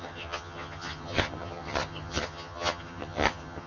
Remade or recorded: remade